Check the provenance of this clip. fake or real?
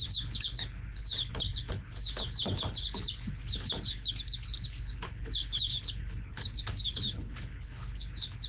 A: fake